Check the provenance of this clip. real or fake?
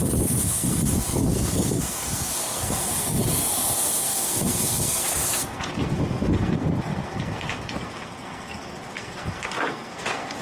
fake